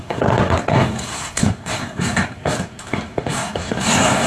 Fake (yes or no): yes